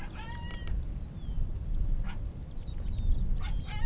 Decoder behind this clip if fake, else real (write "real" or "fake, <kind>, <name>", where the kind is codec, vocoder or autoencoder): real